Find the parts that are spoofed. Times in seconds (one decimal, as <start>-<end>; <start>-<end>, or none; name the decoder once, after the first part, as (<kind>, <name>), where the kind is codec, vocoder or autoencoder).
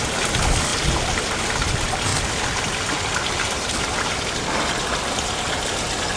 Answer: none